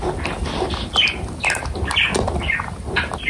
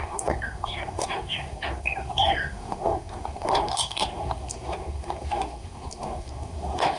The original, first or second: first